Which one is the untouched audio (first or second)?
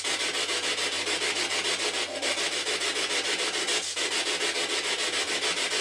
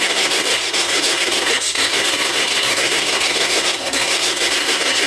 first